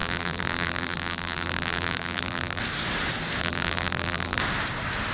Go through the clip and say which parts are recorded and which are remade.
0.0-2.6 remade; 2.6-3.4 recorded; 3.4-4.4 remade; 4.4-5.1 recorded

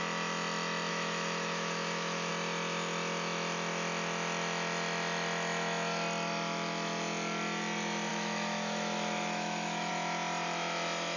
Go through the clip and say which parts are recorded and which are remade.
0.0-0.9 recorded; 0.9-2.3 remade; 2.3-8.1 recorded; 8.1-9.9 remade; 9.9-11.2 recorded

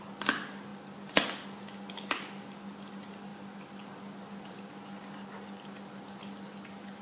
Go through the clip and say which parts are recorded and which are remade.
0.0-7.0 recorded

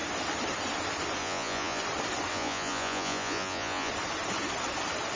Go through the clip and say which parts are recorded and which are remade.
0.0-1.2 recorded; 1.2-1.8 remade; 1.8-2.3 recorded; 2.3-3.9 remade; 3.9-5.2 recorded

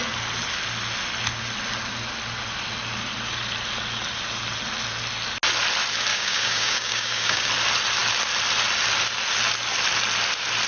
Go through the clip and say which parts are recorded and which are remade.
0.0-6.1 recorded; 6.1-7.5 remade; 7.5-10.7 recorded